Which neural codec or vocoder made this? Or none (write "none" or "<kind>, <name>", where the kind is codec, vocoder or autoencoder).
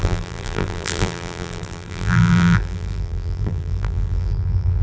vocoder, BigVGAN v2